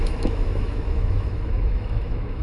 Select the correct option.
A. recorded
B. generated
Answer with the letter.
B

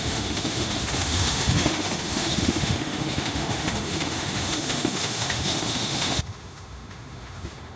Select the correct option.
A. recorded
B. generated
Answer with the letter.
B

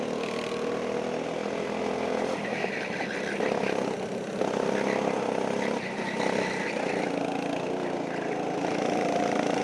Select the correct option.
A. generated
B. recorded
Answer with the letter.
B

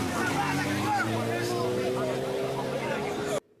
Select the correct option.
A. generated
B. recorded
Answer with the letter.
B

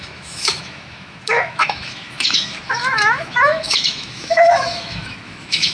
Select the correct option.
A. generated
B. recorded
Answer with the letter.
A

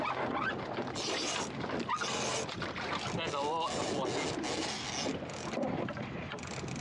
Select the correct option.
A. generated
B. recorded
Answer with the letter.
B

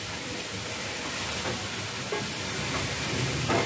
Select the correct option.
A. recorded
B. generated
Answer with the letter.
A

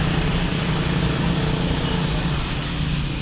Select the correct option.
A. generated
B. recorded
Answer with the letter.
B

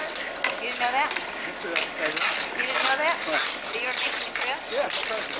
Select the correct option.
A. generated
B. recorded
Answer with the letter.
B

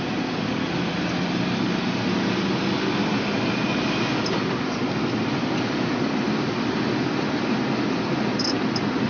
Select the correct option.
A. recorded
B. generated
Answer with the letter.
A